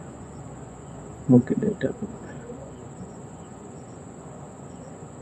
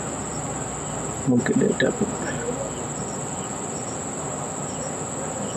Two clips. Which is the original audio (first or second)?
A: second